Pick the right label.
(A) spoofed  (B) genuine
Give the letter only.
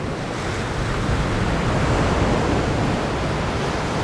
B